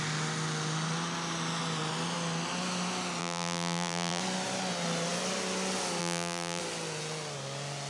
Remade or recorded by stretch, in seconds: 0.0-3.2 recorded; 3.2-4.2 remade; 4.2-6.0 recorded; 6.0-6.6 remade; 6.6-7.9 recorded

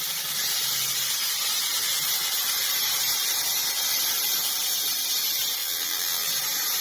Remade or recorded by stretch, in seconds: 0.0-5.6 recorded; 5.6-6.3 remade; 6.3-6.8 recorded